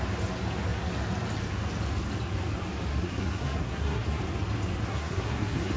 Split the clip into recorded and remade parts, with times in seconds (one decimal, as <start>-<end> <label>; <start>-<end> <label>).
0.0-2.9 recorded; 2.9-4.2 remade; 4.2-4.9 recorded; 4.9-5.8 remade